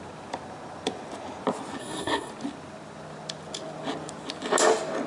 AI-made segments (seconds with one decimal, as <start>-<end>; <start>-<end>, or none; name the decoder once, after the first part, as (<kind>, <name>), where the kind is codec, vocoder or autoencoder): 1.8-2.3 (codec, SNAC)